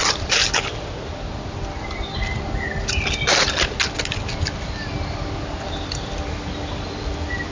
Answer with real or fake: real